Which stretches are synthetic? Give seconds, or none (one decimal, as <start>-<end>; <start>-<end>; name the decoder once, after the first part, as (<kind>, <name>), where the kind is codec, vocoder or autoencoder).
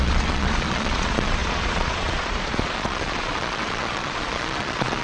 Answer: 0.0-5.0 (vocoder, Vocos)